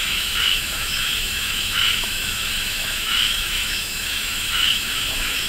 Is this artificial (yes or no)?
yes